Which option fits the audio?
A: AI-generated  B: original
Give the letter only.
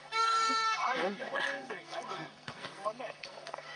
A